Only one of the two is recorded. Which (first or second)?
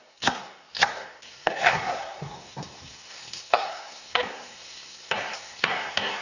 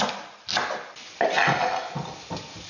second